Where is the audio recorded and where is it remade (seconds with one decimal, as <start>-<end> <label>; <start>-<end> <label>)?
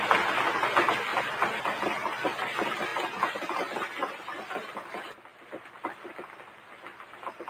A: 0.0-1.1 recorded; 1.1-1.6 remade; 1.6-5.3 recorded; 5.3-6.1 remade; 6.1-7.5 recorded